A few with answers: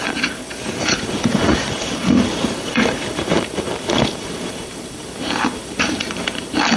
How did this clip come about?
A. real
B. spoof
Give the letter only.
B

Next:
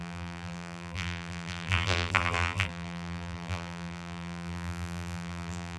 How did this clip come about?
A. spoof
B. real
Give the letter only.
A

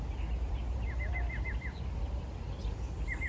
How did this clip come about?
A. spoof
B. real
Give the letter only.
B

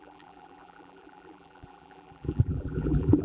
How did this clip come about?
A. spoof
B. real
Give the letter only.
A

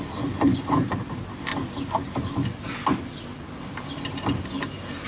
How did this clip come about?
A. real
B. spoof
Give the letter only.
A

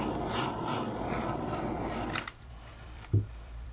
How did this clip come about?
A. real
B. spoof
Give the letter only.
B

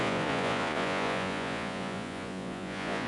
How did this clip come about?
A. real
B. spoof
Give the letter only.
B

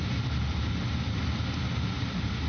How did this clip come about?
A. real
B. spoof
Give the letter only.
A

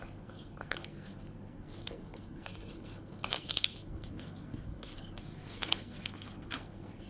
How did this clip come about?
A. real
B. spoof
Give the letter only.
B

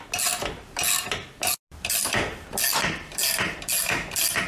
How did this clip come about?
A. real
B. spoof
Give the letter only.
A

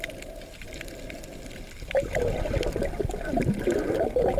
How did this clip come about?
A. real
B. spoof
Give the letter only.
A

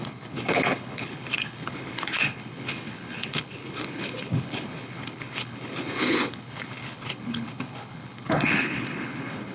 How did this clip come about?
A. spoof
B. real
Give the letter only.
A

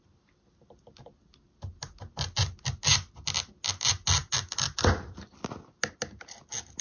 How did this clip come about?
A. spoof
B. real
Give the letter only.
B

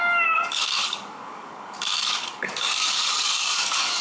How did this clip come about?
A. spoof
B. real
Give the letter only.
A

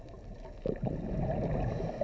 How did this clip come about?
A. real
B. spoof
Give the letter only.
A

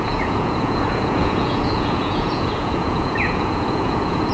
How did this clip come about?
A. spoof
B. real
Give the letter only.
A